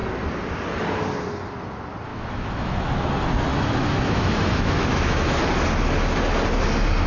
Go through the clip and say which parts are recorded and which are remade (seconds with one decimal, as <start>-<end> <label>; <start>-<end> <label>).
0.0-2.1 recorded; 2.1-2.9 remade; 2.9-3.5 recorded; 3.5-5.4 remade; 5.4-7.1 recorded